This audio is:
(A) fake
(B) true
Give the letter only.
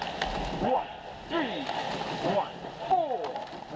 B